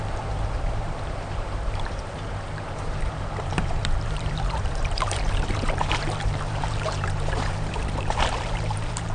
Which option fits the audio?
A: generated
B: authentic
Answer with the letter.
A